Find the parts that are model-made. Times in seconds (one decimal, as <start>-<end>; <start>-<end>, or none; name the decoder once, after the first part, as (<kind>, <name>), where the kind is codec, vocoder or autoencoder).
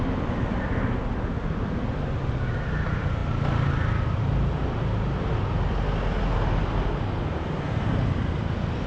none